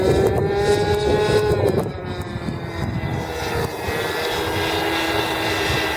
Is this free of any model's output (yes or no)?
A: yes